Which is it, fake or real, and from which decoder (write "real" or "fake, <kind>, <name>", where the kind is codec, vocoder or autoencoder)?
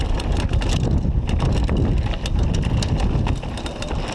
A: real